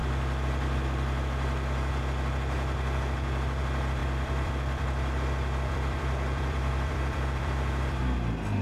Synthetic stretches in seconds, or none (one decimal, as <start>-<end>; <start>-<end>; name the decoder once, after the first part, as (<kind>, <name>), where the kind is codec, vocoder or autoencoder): 4.0-8.0 (vocoder, BigVGAN v2)